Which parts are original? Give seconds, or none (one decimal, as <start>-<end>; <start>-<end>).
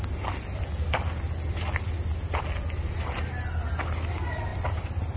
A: 0.0-5.2